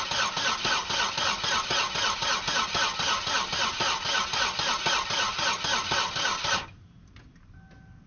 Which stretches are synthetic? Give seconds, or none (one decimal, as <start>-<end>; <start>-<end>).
none